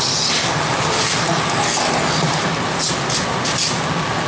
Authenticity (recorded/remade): recorded